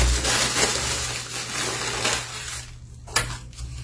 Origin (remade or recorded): recorded